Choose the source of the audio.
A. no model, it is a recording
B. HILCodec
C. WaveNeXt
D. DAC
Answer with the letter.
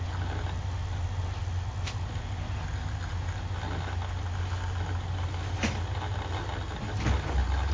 A